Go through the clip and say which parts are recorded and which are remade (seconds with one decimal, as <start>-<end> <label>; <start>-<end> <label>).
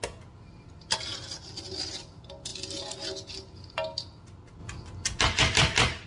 0.0-6.1 recorded